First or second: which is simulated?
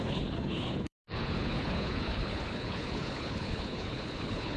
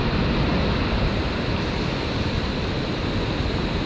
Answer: first